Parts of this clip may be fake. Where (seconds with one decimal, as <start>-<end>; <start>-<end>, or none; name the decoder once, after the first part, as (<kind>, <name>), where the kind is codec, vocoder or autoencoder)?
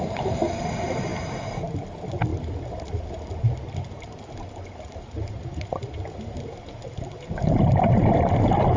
none